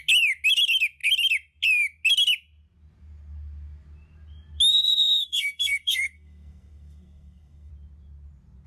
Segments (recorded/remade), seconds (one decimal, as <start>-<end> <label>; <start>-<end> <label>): 0.0-4.7 recorded; 4.7-7.7 remade; 7.7-8.7 recorded